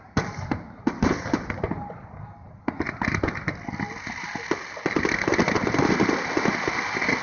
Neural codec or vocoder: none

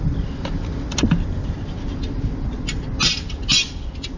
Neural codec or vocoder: none